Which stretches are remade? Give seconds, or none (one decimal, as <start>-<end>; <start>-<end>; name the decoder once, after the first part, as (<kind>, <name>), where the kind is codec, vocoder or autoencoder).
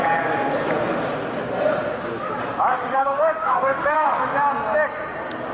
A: 2.7-4.2 (autoencoder, DAC-VAE)